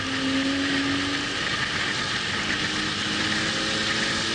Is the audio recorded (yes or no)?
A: yes